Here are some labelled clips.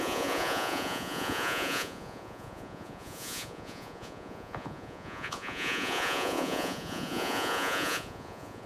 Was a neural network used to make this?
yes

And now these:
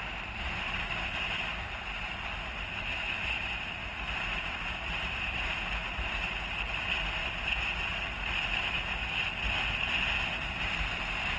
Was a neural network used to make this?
no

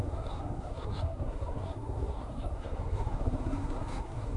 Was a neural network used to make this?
yes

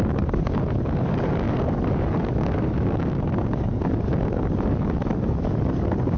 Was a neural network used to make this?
yes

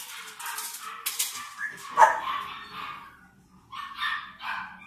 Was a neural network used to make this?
no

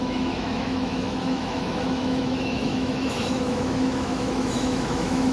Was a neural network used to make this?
yes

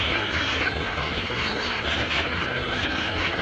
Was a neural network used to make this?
yes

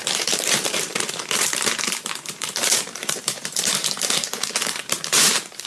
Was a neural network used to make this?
yes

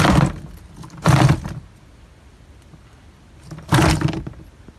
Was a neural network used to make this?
no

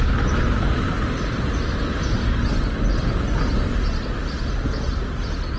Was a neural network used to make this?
no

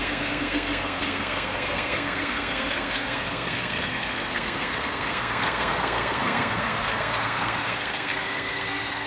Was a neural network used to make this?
yes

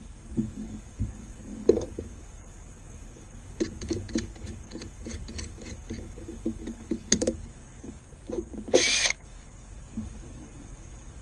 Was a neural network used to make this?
yes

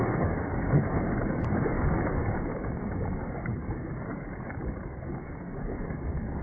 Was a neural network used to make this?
yes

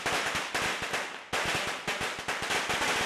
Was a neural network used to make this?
no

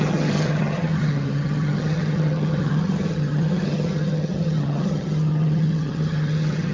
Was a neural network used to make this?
yes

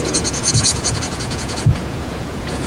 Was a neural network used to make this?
yes